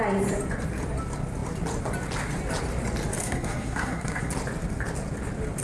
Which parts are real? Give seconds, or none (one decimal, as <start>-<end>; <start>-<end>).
0.0-3.2; 4.3-5.6